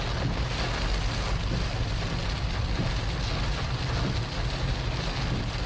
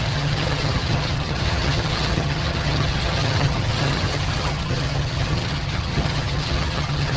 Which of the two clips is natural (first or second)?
first